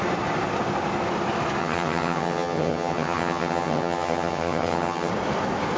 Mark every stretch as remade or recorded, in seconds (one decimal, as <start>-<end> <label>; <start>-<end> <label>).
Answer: 0.0-1.6 recorded; 1.6-5.1 remade; 5.1-5.8 recorded